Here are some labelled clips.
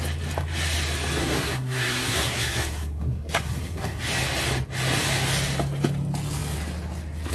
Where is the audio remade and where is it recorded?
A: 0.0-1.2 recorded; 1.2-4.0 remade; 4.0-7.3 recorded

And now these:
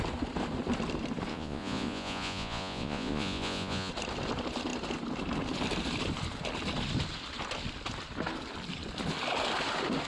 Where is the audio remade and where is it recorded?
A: 0.0-1.3 recorded; 1.3-3.9 remade; 3.9-10.1 recorded

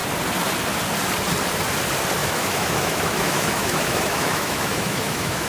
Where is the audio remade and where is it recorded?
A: 0.0-2.2 recorded; 2.2-5.5 remade